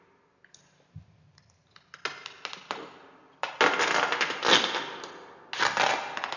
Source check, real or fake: real